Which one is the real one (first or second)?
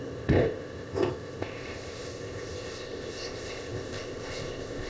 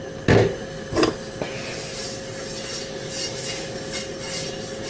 second